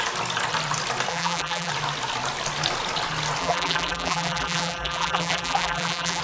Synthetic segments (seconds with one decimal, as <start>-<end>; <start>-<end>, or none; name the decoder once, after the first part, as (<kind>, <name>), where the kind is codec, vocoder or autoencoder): 1.1-1.7 (vocoder, BigVGAN v2); 3.4-6.2